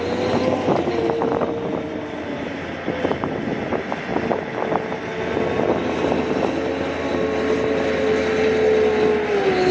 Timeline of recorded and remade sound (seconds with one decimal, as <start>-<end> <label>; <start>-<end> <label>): 0.0-9.7 recorded